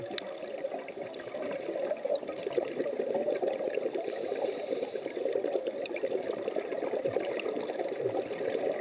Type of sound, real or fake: real